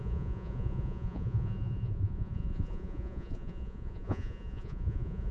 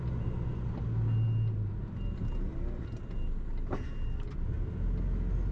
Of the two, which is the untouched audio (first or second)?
second